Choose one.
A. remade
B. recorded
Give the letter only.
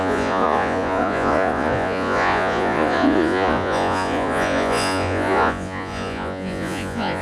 A